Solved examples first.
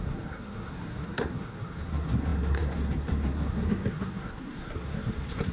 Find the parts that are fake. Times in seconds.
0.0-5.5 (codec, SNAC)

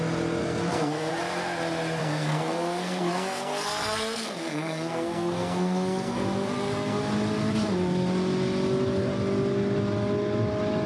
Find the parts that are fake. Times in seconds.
0.4-1.1 (codec, SNAC); 2.0-7.0

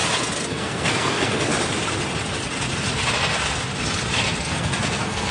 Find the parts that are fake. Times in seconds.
0.5-1.5 (codec, SNAC); 4.4-5.3

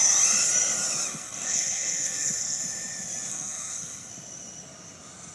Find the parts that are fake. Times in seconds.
1.1-2.6 (codec, SNAC); 3.3-4.1

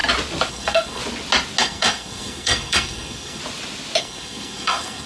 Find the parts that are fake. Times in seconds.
0.5-1.0 (codec, SNAC); 1.6-3.4; 4.0-5.1

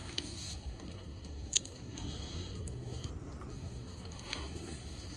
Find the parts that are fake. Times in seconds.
0.0-3.1 (codec, SNAC); 3.5-5.2

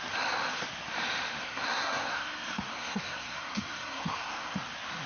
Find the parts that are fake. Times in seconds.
1.4-4.5 (codec, SNAC)

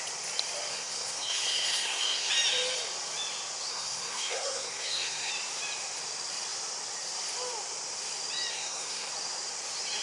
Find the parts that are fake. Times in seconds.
0.7-2.3 (codec, SNAC); 3.7-5.3; 8.5-9.1